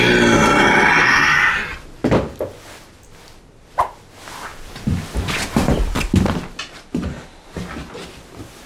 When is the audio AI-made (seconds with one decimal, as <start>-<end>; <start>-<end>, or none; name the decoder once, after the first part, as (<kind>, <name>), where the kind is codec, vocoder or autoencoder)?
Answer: none